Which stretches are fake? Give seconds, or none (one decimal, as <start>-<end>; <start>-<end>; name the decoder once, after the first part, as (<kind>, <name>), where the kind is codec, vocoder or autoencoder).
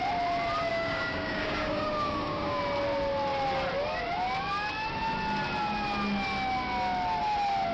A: 0.7-2.6 (codec, DAC)